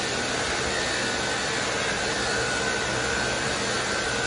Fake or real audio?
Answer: real